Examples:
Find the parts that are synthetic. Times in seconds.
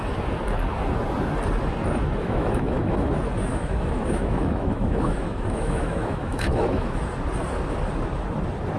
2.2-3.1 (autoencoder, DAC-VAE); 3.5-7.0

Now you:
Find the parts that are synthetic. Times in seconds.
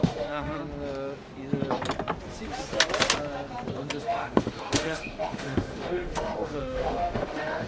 0.0-0.6 (autoencoder, DAC-VAE); 4.0-7.7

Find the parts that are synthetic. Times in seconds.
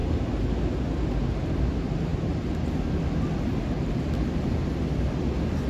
none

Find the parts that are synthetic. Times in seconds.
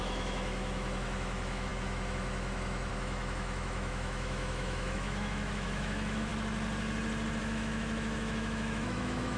0.0-6.3 (autoencoder, DAC-VAE); 7.4-9.4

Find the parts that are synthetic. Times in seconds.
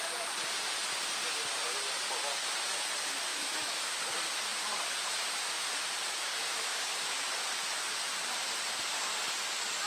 3.3-3.9 (autoencoder, DAC-VAE); 6.5-7.3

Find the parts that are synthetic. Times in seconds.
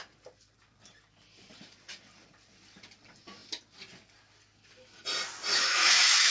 5.5-6.3 (autoencoder, DAC-VAE)